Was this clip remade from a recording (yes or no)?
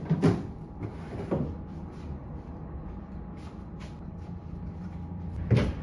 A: yes